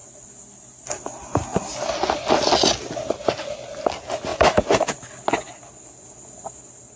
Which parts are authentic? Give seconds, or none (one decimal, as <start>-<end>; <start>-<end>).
0.0-7.0